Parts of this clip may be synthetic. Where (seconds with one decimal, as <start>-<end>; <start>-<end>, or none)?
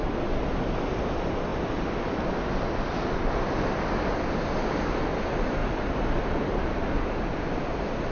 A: none